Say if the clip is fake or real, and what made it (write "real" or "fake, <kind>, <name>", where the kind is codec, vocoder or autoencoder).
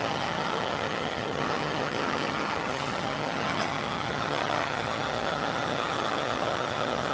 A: fake, vocoder, HiFi-GAN